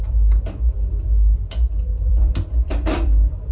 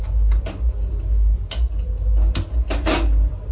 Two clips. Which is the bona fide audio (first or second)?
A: second